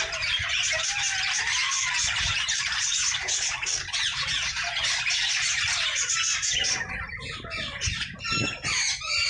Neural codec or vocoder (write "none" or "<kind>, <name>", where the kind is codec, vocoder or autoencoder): vocoder, BigVGAN v2